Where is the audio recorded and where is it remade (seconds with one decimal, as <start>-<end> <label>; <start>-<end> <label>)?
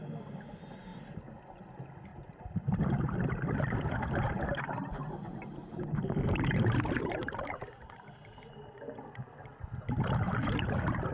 0.0-2.1 recorded; 2.1-2.6 remade; 2.6-5.0 recorded; 5.0-8.5 remade; 8.5-11.1 recorded